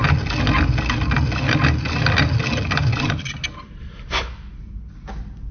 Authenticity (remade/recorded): recorded